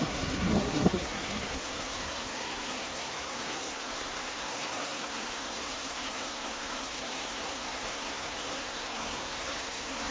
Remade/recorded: remade